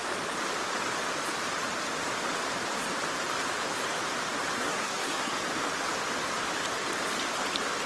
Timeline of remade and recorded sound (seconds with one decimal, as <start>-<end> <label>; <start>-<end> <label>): 0.0-4.6 recorded; 4.6-5.3 remade; 5.3-7.9 recorded